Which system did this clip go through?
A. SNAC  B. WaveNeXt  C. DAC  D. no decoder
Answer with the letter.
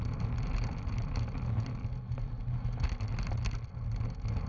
D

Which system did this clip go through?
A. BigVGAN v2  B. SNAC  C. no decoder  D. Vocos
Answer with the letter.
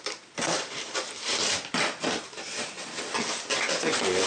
C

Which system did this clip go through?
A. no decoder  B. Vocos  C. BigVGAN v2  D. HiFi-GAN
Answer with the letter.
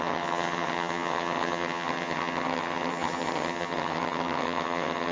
D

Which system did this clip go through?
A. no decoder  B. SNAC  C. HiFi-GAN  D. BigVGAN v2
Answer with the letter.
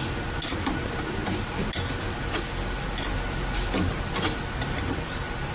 A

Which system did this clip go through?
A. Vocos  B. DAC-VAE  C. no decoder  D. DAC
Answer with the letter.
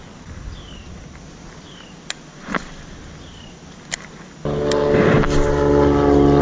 C